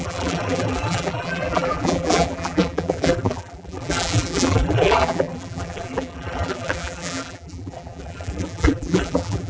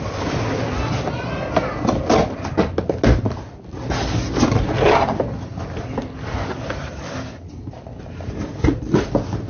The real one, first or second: second